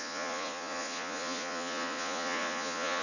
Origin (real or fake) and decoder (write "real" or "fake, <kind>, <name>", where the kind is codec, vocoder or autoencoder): fake, vocoder, Vocos